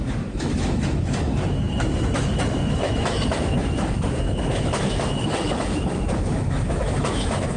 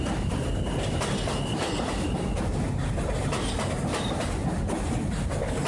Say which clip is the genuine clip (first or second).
second